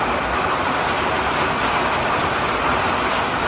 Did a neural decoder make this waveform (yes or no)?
no